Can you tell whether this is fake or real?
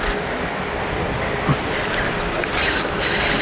real